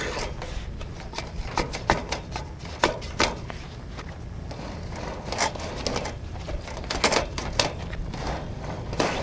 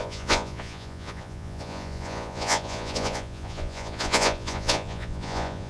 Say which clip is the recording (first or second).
first